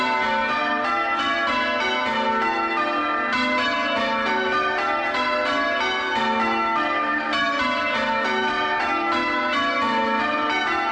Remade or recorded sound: recorded